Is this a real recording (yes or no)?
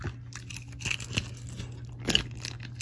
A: yes